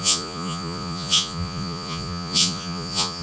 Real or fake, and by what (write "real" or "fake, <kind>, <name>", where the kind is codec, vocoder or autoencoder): fake, vocoder, Vocos